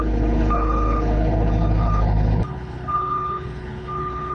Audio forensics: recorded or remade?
remade